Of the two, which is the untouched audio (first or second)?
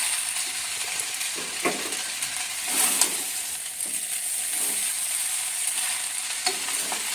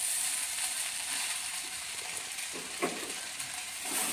first